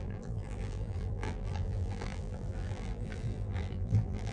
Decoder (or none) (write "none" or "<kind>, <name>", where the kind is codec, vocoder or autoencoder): vocoder, BigVGAN v2